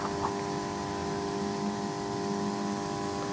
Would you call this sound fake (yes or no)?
no